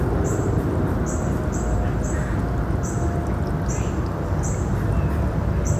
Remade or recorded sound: recorded